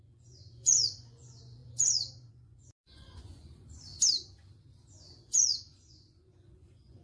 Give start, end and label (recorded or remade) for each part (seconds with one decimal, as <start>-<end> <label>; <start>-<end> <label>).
0.0-3.9 remade; 3.9-4.9 recorded; 4.9-7.0 remade